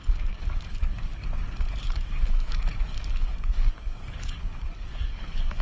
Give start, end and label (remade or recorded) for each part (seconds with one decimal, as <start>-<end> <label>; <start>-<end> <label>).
0.0-1.1 remade; 1.1-1.8 recorded; 1.8-5.6 remade